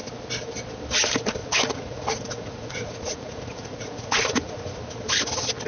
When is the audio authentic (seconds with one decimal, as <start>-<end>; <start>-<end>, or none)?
0.0-1.4; 4.8-5.7